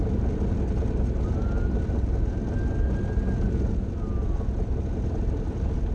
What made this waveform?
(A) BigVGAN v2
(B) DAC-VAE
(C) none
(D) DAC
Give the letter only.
C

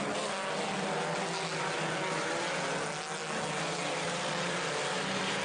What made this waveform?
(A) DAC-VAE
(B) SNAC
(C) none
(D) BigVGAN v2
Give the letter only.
C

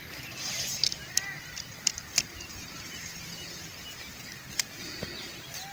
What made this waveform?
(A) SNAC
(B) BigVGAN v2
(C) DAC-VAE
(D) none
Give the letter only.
D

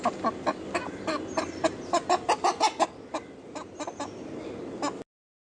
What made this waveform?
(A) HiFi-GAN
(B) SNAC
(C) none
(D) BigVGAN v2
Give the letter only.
C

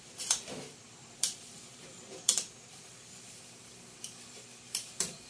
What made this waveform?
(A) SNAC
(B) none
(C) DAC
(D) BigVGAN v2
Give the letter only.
D